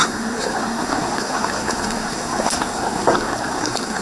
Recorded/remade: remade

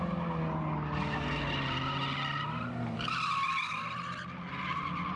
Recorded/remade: recorded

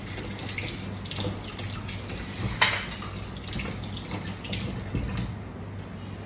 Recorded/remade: recorded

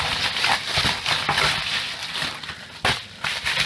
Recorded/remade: recorded